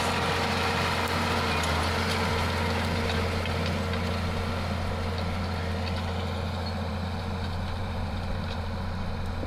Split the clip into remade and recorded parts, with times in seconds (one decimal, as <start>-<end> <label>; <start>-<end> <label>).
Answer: 0.0-7.8 recorded; 7.8-8.6 remade; 8.6-9.5 recorded